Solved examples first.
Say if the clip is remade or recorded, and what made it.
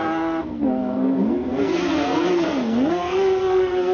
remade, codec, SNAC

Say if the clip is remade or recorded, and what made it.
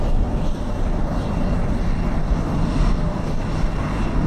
recorded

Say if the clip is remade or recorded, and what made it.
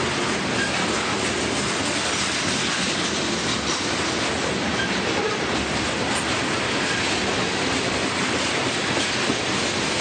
recorded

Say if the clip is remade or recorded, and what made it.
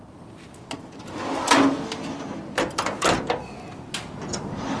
recorded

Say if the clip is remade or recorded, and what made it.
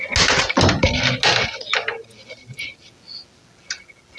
recorded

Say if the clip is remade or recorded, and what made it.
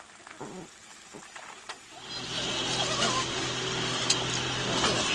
recorded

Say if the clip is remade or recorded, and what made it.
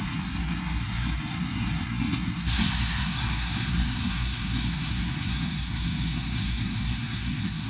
remade, codec, SNAC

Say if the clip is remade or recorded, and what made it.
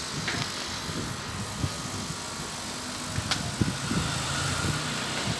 recorded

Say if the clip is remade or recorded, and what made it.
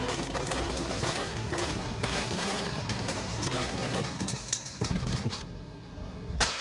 remade, codec, SNAC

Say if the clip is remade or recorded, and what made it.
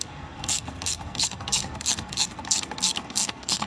remade, codec, SNAC